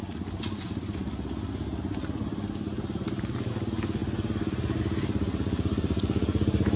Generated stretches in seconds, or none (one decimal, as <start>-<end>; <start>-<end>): none